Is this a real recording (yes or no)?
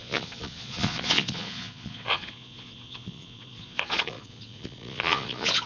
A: no